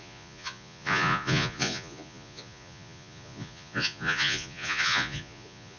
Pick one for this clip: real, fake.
fake